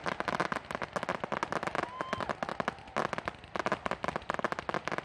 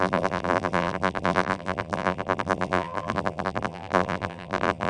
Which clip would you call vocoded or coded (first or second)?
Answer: second